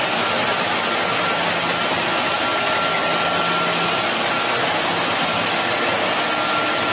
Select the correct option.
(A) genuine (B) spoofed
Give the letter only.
A